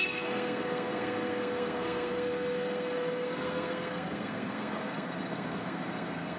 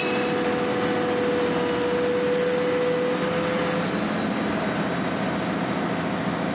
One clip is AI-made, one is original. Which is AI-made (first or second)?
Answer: first